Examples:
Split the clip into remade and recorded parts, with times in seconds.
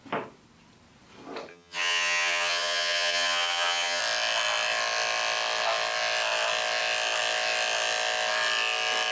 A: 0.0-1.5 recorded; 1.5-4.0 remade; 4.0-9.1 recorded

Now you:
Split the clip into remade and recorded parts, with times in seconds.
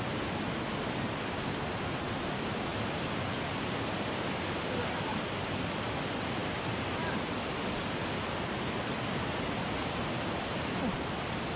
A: 0.0-11.6 recorded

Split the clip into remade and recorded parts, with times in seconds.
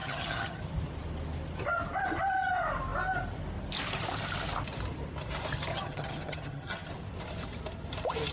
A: 0.0-0.6 remade; 0.6-5.7 recorded; 5.7-6.9 remade; 6.9-8.3 recorded